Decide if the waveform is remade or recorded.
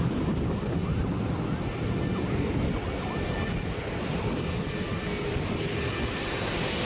recorded